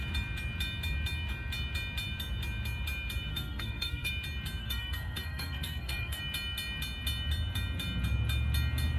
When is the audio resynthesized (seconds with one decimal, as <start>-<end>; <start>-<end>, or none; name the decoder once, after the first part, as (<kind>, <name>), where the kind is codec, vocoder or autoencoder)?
3.3-4.1 (codec, SNAC); 4.6-6.2